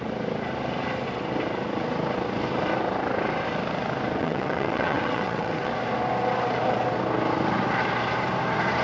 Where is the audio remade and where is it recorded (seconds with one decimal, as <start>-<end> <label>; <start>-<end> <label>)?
0.0-4.2 recorded; 4.2-5.7 remade; 5.7-8.8 recorded